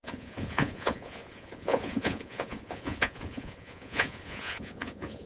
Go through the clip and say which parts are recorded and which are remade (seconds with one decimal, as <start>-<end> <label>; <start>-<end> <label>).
0.0-5.3 remade